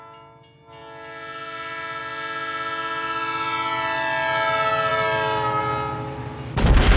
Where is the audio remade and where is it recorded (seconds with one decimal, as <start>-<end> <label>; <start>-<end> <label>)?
0.0-7.0 recorded